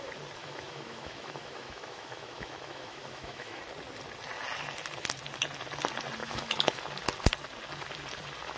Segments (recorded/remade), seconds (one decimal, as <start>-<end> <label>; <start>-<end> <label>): 0.0-0.4 recorded; 0.4-3.6 remade; 3.6-6.2 recorded; 6.2-6.8 remade; 6.8-8.6 recorded